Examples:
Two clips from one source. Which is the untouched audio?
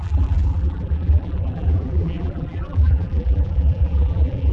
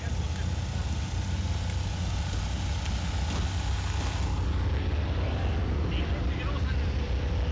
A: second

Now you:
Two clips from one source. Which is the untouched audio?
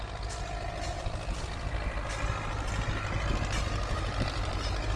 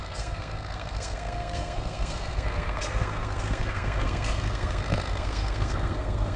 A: first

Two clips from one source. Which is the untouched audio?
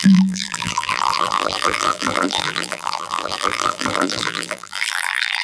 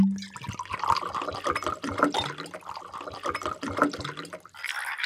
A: second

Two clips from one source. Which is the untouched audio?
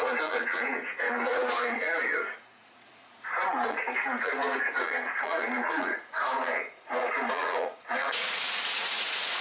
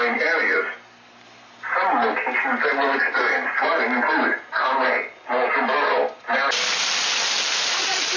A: second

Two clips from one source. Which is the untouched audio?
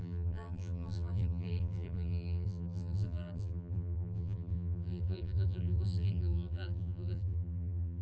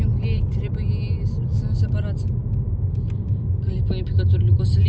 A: second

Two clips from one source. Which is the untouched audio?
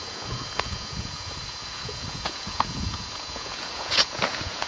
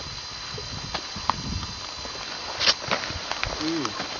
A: second